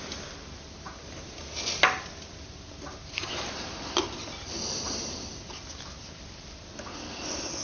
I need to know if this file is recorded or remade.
recorded